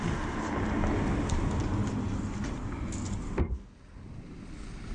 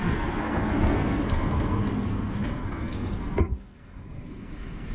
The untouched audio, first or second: first